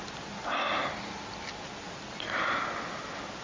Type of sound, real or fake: real